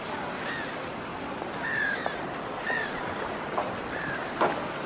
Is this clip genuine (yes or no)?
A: yes